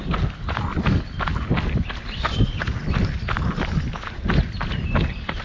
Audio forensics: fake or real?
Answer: real